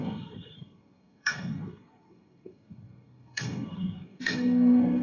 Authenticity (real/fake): fake